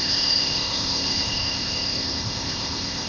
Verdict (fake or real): fake